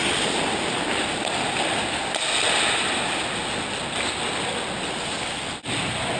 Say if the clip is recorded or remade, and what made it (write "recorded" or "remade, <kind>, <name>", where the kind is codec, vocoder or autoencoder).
recorded